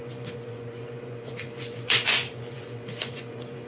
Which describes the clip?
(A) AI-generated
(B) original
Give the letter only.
A